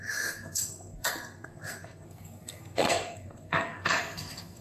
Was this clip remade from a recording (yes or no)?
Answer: yes